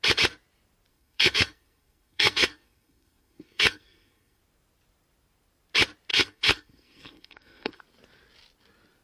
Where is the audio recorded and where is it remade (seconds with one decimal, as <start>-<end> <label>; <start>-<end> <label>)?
0.0-0.9 recorded; 0.9-4.4 remade; 4.4-6.1 recorded; 6.1-7.8 remade; 7.8-9.0 recorded